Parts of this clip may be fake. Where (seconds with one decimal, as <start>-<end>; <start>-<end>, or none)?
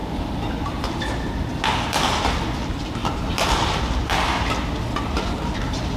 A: none